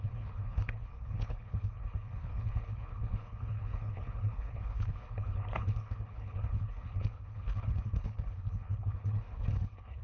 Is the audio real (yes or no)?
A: no